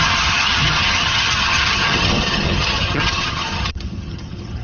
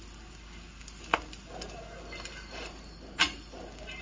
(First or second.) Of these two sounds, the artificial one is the first